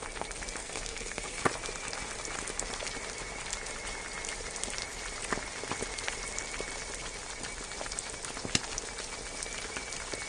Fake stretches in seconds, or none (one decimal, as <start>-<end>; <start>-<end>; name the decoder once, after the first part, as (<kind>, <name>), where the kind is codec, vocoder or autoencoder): 0.6-1.4 (codec, SNAC)